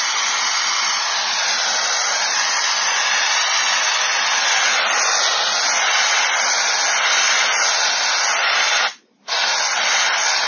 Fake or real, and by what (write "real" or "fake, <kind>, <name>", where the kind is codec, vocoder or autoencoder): real